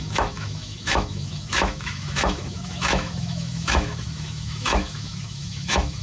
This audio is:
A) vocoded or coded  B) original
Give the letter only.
A